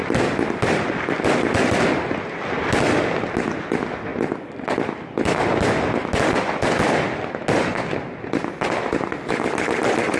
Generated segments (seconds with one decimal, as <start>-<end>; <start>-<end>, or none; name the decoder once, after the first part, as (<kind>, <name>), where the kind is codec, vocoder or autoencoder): none